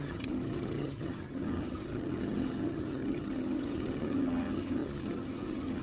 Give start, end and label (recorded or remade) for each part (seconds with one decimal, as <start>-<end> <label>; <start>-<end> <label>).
0.0-5.8 remade